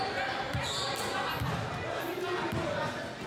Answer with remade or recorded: recorded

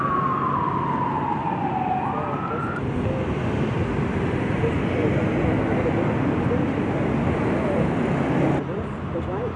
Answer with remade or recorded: recorded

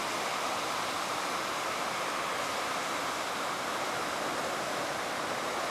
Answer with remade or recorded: recorded